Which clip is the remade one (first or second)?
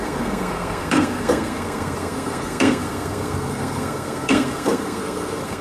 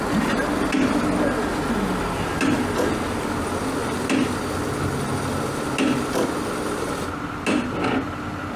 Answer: first